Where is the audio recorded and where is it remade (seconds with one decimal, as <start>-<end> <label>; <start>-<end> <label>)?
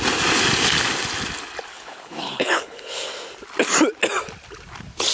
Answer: 0.0-1.7 recorded; 1.7-3.1 remade; 3.1-5.1 recorded